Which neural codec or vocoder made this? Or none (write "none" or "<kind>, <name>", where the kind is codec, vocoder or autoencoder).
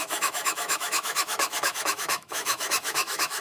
autoencoder, DAC-VAE